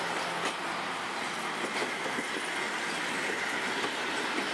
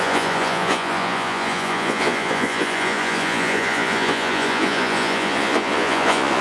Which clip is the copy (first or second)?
second